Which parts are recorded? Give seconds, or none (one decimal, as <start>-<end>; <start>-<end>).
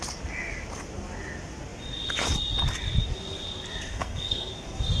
0.0-3.9; 4.5-5.0